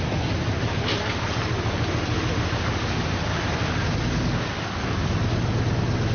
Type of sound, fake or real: real